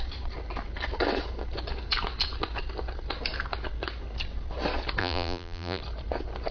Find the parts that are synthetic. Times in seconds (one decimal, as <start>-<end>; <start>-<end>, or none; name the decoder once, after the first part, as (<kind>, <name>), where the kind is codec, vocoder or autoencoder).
5.0-5.8 (vocoder, BigVGAN v2)